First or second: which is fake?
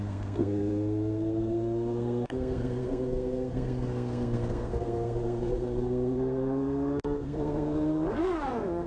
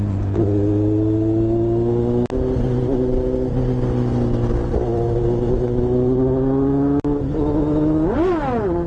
first